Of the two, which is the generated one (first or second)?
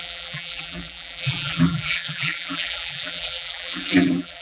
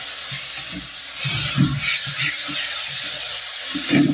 first